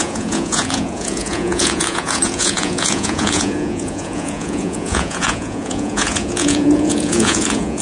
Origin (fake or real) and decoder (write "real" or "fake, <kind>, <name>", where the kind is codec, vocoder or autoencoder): fake, vocoder, Vocos